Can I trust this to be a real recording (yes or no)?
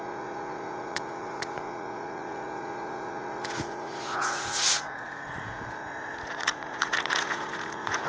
no